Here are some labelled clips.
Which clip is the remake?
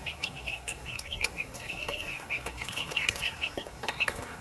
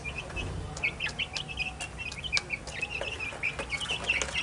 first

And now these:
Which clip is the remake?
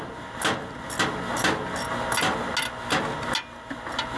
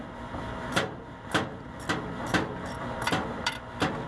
second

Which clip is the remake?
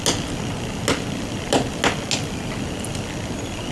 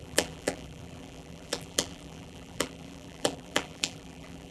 second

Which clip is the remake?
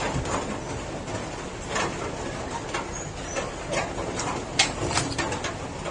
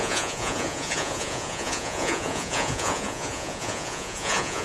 second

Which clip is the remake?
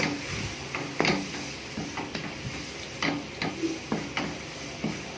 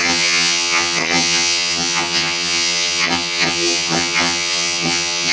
second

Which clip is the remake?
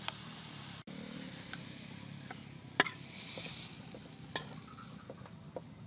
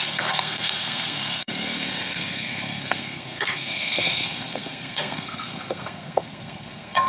second